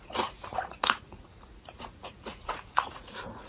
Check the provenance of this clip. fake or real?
fake